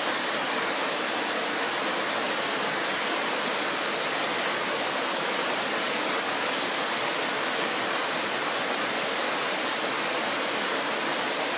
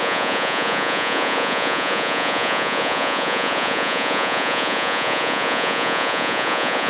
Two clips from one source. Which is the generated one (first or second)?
second